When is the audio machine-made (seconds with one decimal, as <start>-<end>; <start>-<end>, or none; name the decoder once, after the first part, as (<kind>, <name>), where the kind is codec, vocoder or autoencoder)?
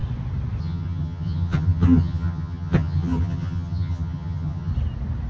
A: 0.6-4.7 (vocoder, HiFi-GAN)